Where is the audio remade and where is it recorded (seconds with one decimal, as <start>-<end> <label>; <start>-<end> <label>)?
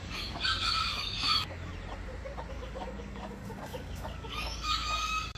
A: 0.0-1.7 remade; 1.7-2.5 recorded; 2.5-5.4 remade